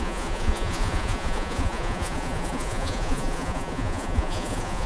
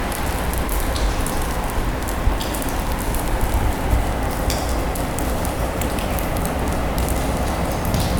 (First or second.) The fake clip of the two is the first